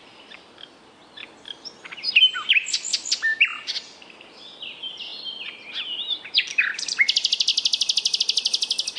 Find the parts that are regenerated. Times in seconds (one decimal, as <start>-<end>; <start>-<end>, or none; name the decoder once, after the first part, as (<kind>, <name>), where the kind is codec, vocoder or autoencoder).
0.0-5.1 (vocoder, BigVGAN v2); 6.6-7.5; 8.2-9.0